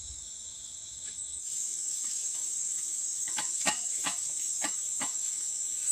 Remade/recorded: remade